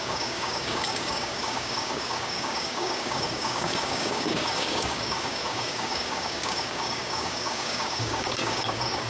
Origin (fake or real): fake